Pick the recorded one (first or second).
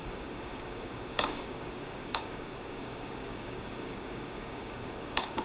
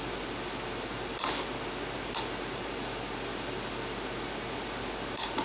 second